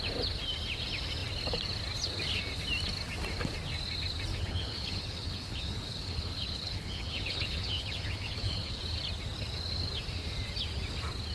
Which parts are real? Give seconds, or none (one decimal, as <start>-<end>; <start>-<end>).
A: 0.0-4.3; 8.8-11.3